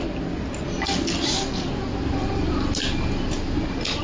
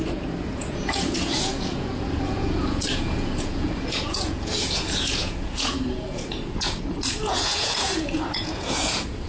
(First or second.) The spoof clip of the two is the second